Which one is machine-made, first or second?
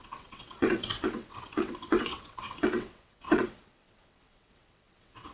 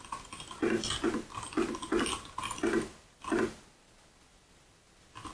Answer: first